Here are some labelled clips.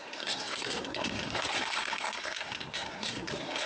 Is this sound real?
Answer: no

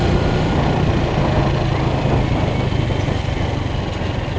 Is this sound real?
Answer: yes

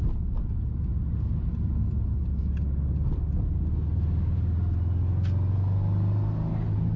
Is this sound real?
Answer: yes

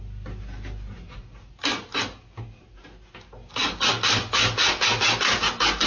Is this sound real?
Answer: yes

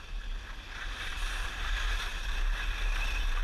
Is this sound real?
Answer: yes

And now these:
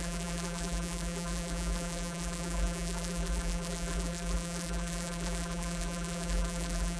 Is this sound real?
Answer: no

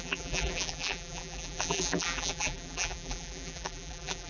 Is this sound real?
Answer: no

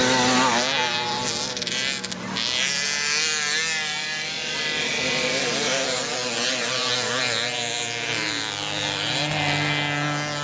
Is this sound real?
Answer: yes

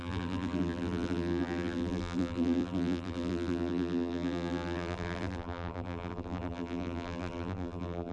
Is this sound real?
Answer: no